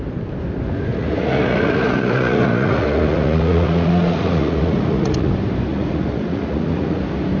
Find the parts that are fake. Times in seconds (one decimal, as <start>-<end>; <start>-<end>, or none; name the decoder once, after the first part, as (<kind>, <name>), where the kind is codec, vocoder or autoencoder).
0.9-5.3 (vocoder, Vocos); 5.7-7.0